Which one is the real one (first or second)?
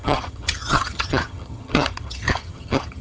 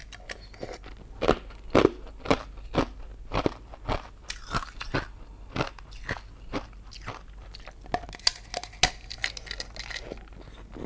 second